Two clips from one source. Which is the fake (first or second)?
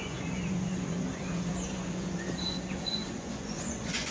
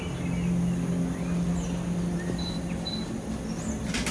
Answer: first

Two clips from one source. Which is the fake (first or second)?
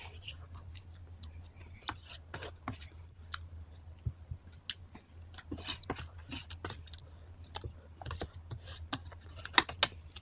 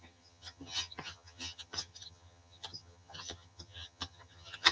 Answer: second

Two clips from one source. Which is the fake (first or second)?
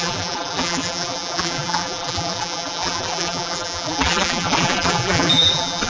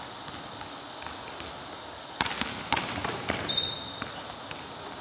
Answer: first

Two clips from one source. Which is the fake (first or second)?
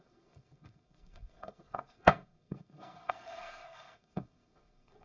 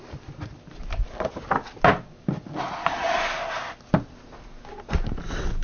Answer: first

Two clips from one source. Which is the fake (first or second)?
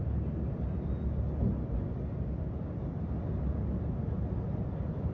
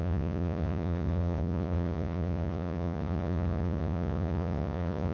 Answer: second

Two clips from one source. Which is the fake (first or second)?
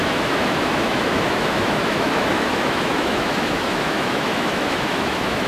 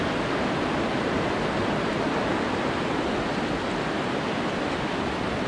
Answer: first